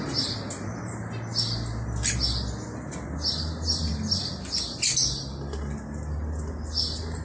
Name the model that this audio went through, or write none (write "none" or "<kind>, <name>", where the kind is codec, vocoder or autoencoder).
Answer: none